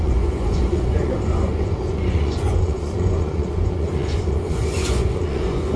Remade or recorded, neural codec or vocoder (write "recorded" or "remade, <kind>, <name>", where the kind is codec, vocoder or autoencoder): remade, vocoder, Vocos